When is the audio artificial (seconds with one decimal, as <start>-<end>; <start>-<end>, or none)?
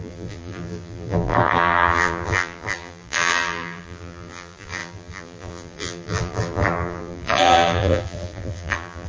0.0-9.1